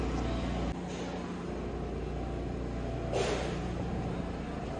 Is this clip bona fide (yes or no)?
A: yes